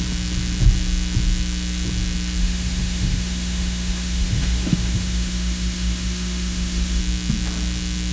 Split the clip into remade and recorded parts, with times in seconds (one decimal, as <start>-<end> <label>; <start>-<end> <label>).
0.0-2.4 recorded; 2.4-7.0 remade; 7.0-8.1 recorded